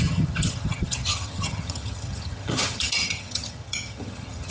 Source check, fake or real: fake